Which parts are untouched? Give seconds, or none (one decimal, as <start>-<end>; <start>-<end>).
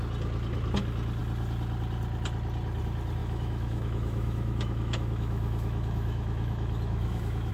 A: 0.0-3.2